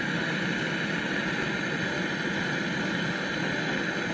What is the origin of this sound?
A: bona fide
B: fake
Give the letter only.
A